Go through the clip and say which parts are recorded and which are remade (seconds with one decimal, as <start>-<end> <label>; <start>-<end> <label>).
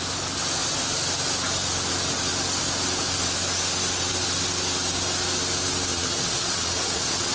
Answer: 0.0-5.9 recorded; 5.9-7.3 remade